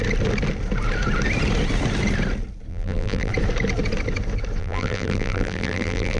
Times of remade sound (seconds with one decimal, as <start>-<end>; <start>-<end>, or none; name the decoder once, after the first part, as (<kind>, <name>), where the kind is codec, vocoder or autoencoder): 2.7-3.3 (vocoder, BigVGAN v2); 4.6-6.2